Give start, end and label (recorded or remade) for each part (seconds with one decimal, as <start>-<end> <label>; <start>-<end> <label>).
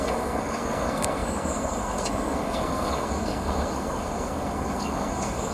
0.0-5.5 remade